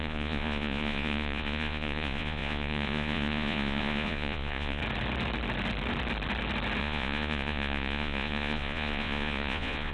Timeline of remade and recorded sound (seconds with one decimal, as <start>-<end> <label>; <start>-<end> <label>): 0.0-4.8 remade; 4.8-6.8 recorded; 6.8-9.9 remade